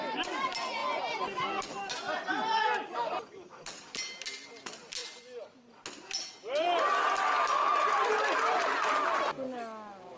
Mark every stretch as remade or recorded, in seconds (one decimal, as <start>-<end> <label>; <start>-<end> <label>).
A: 0.0-10.2 recorded